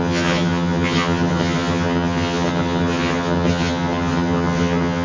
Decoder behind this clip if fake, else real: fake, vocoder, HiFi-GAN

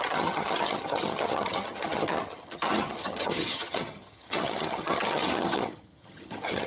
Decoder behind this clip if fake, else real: fake, vocoder, HiFi-GAN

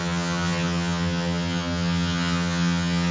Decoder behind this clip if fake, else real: fake, vocoder, HiFi-GAN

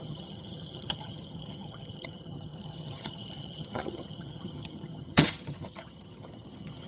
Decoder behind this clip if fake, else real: fake, vocoder, HiFi-GAN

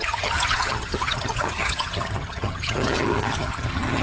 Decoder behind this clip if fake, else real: fake, vocoder, HiFi-GAN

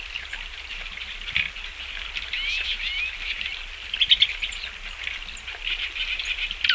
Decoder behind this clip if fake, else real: real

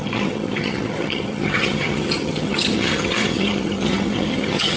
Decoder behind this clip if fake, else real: fake, vocoder, HiFi-GAN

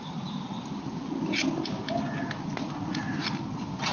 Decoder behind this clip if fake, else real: real